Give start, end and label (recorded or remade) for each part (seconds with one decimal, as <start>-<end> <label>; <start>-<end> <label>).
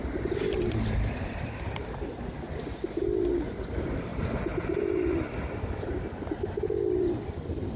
0.0-7.8 recorded